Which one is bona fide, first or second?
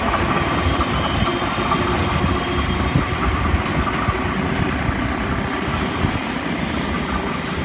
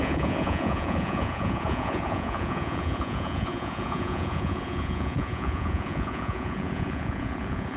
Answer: first